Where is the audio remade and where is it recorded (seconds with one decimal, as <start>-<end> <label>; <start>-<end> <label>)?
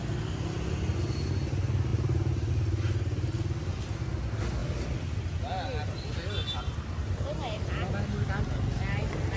0.0-1.9 recorded; 1.9-2.5 remade; 2.5-9.4 recorded